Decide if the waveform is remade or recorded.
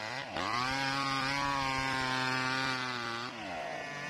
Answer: recorded